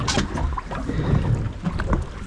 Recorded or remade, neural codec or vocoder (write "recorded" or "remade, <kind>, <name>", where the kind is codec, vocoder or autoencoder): recorded